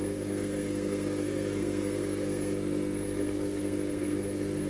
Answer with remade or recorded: remade